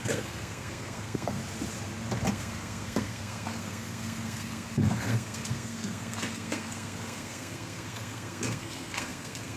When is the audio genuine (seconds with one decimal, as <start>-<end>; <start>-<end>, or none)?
1.4-2.3